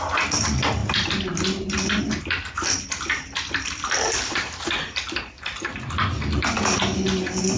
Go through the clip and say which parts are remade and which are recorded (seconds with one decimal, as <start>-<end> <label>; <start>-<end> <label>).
0.0-7.6 recorded